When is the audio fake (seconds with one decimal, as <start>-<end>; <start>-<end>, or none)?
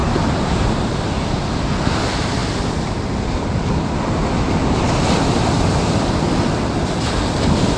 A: 0.0-1.0